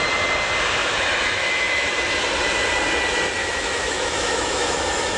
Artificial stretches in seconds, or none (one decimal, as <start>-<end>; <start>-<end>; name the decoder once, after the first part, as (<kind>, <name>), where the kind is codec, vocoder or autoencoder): 0.8-1.9 (autoencoder, DAC-VAE); 3.4-5.2